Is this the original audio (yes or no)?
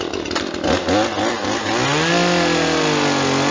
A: yes